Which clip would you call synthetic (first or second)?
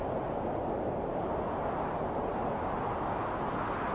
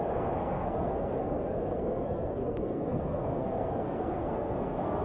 second